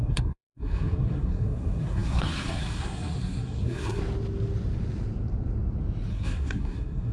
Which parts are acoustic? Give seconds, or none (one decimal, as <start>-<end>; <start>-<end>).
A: 4.0-6.1